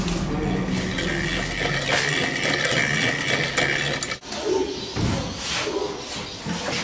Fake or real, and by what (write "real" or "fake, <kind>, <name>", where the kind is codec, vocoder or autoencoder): real